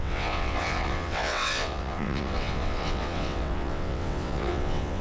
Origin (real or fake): fake